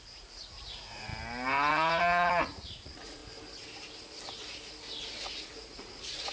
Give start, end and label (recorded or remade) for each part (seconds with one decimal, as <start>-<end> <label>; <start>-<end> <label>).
0.0-1.1 remade; 1.1-1.7 recorded; 1.7-3.2 remade; 3.2-5.2 recorded; 5.2-6.3 remade